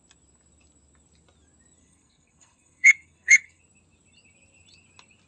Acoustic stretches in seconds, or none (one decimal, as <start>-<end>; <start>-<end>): 0.0-1.8; 3.6-5.3